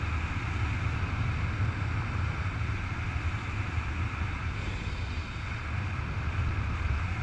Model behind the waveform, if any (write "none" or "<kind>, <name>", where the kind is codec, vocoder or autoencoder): none